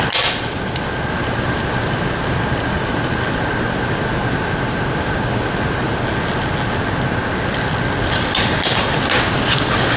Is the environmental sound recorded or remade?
recorded